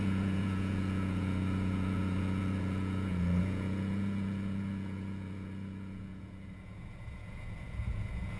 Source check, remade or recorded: remade